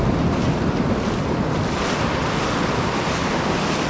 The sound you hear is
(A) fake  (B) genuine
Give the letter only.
B